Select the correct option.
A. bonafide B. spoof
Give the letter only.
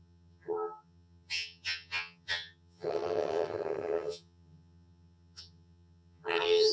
B